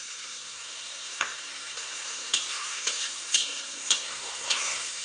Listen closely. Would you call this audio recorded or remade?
remade